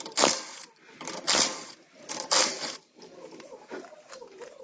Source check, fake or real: real